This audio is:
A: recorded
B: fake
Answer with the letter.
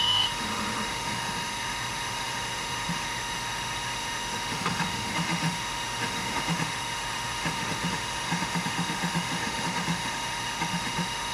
B